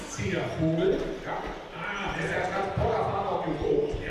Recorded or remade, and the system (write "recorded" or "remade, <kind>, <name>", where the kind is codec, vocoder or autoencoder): recorded